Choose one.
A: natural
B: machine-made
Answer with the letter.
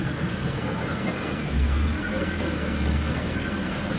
B